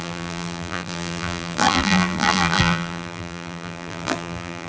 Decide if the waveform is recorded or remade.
remade